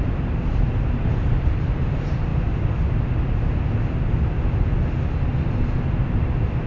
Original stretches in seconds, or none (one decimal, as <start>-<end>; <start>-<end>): 2.3-6.3